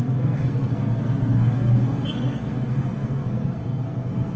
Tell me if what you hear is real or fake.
fake